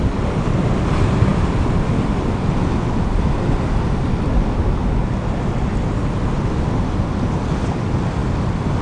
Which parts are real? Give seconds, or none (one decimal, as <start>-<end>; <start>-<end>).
0.0-8.8